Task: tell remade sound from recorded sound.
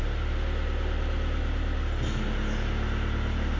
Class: recorded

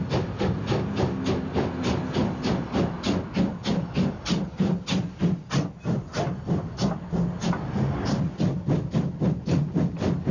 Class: recorded